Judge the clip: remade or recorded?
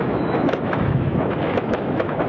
remade